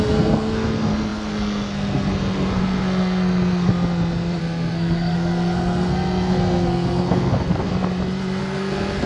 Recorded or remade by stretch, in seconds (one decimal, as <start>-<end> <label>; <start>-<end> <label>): 0.0-3.7 remade; 3.7-4.4 recorded; 4.4-7.7 remade; 7.7-8.4 recorded; 8.4-9.1 remade

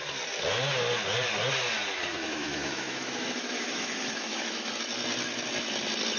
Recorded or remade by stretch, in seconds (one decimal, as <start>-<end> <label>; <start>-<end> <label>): 0.0-2.1 recorded; 2.1-4.7 remade; 4.7-6.2 recorded